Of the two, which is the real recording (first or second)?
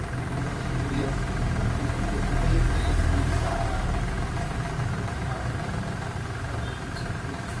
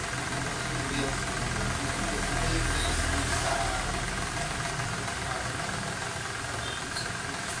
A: second